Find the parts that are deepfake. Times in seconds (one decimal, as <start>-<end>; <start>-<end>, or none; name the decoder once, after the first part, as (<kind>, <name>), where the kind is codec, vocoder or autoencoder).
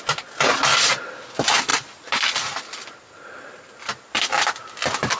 none